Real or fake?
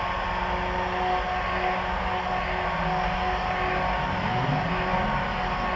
real